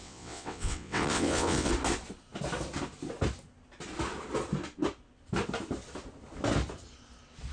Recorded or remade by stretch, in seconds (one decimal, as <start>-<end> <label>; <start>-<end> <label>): 0.0-1.7 remade; 1.7-7.5 recorded